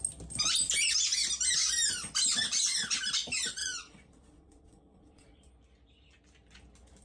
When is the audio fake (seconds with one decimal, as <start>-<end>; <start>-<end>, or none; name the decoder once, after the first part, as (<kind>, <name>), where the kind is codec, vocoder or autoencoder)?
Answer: 3.6-5.5 (vocoder, Vocos)